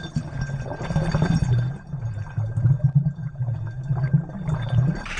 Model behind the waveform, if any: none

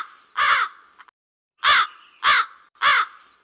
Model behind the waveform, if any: none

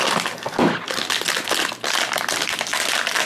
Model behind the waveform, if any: none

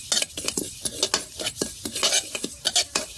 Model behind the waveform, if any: none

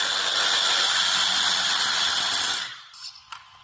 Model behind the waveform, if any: none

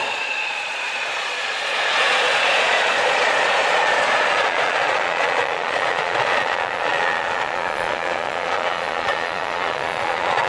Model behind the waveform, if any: vocoder, Vocos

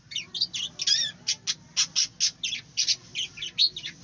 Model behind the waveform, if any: none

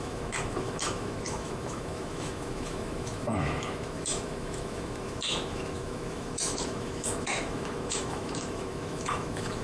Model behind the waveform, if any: autoencoder, DAC-VAE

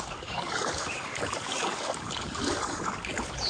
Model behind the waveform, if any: codec, DAC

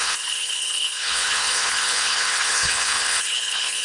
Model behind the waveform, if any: codec, HILCodec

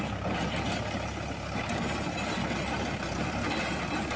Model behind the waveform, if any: none